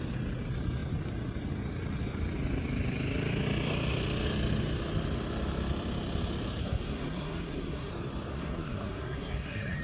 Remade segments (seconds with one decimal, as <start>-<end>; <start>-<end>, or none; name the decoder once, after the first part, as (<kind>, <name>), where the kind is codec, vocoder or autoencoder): 6.6-7.9 (codec, SNAC); 8.3-9.8